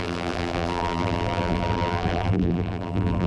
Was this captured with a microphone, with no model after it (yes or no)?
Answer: no